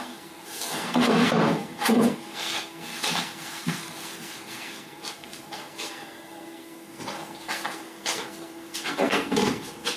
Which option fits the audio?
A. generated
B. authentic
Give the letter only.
A